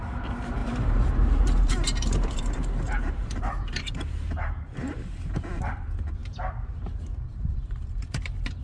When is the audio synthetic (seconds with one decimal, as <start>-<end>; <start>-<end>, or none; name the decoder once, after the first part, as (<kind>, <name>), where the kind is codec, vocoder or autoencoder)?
0.6-5.3 (vocoder, BigVGAN v2); 7.3-8.6